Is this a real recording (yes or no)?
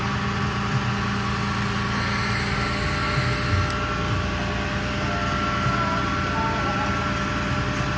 yes